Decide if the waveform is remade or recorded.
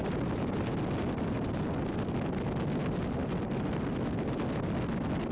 recorded